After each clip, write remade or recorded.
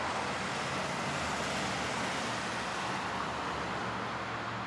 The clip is recorded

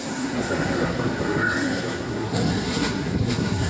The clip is remade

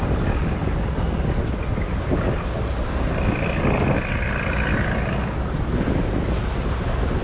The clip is recorded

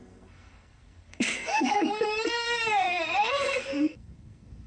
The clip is remade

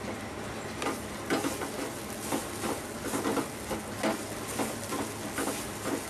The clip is recorded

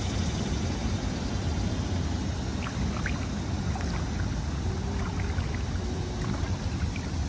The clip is recorded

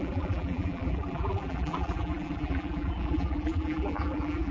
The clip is remade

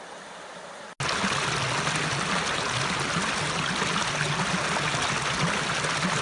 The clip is recorded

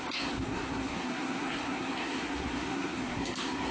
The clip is remade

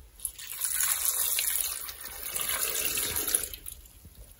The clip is recorded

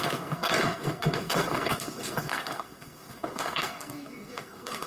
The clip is remade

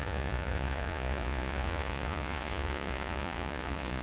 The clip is remade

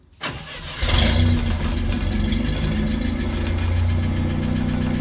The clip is recorded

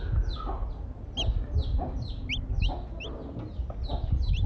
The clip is recorded